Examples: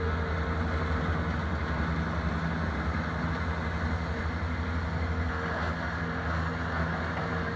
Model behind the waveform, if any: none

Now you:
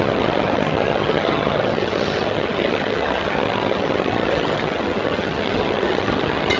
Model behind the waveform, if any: vocoder, HiFi-GAN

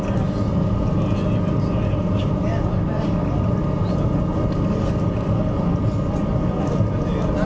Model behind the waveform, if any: none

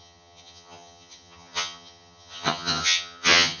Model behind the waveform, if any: vocoder, HiFi-GAN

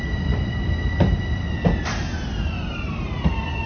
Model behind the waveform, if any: none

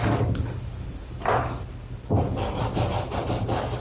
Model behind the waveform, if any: none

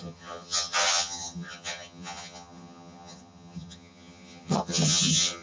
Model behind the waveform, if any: vocoder, HiFi-GAN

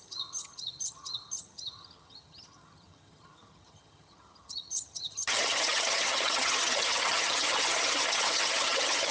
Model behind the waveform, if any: vocoder, HiFi-GAN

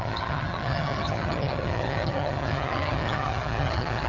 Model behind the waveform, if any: vocoder, HiFi-GAN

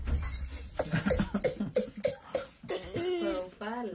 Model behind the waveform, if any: none